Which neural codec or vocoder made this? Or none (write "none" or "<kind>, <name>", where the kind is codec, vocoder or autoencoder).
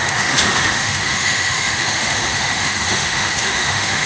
autoencoder, DAC-VAE